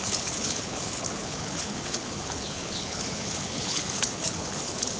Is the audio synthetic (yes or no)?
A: yes